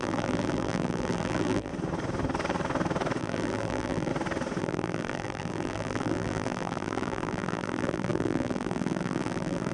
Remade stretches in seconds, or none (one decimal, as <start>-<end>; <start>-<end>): 0.0-1.7; 3.2-4.1; 4.6-9.7